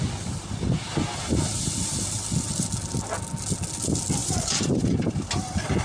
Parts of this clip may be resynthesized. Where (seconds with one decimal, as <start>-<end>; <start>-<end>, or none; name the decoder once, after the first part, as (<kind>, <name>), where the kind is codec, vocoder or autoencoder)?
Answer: 4.2-5.3 (vocoder, BigVGAN v2)